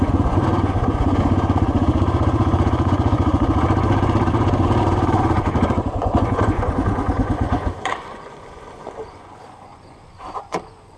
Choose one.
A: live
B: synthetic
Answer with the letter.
B